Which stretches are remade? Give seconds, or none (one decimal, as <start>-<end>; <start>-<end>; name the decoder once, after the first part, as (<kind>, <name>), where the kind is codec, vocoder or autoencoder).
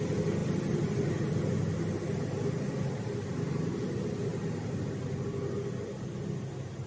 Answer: none